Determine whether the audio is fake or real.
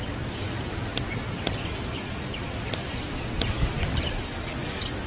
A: real